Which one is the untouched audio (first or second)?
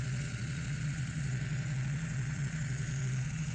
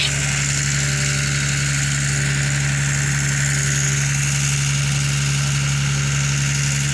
second